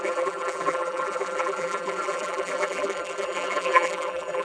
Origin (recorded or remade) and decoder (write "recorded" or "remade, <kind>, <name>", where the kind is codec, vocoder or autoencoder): remade, vocoder, BigVGAN v2